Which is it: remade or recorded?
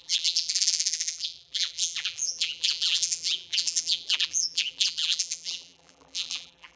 remade